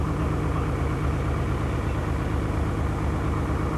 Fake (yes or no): no